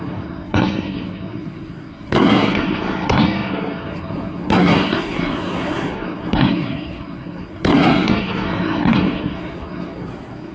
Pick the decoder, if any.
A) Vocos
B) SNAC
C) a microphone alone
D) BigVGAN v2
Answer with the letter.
B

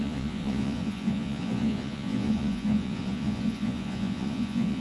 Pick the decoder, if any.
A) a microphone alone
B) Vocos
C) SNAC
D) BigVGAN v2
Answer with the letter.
B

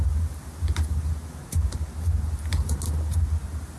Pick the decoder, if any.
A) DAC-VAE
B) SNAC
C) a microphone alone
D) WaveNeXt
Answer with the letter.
C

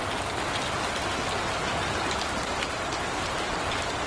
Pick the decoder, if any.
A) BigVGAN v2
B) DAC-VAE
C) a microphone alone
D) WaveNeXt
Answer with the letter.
C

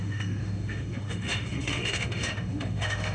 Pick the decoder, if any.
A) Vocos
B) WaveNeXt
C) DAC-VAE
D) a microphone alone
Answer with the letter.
C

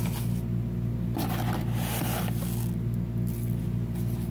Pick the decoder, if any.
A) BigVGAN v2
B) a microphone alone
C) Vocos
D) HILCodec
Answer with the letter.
B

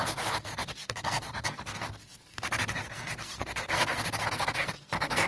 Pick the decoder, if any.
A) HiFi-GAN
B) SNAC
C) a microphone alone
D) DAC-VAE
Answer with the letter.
B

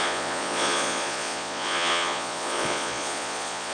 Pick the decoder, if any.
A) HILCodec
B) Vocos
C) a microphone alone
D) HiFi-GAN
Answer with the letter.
B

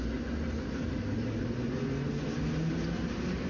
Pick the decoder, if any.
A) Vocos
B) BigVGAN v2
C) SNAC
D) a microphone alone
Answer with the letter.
D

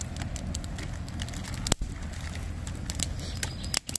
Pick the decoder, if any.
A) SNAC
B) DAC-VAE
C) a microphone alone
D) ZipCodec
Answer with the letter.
C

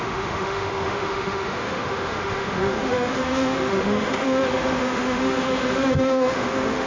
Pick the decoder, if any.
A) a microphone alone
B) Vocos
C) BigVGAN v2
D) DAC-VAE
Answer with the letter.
D